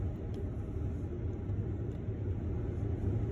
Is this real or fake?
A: real